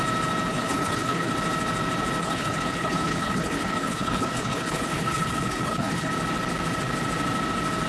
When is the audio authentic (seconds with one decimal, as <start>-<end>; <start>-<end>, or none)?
0.0-0.5; 1.3-2.2; 6.1-7.9